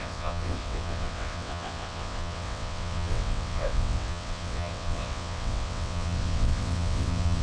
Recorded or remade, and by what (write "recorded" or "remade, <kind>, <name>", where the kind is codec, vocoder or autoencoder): remade, vocoder, WaveNeXt